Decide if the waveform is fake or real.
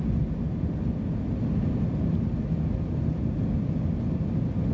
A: real